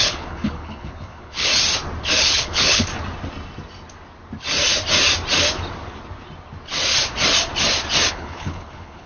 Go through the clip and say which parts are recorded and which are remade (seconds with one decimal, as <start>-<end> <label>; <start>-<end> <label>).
0.0-1.5 remade; 1.5-2.2 recorded; 2.2-2.9 remade; 2.9-8.1 recorded; 8.1-9.1 remade